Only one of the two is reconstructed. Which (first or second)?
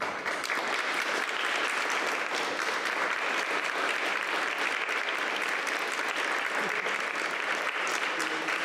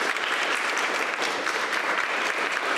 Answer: second